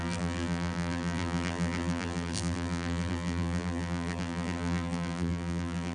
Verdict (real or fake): fake